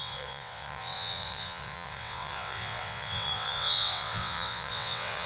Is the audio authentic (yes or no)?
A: no